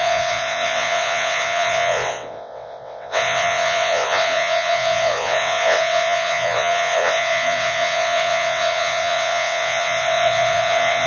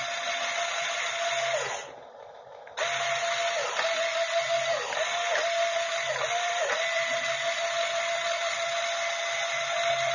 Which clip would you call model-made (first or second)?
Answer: first